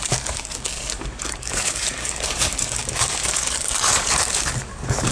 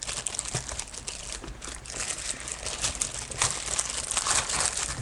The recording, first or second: second